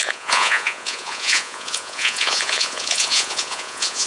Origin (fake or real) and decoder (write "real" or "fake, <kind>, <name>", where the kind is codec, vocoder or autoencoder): fake, vocoder, Vocos